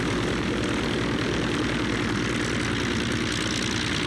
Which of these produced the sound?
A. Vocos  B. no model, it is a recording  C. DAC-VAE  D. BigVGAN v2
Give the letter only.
B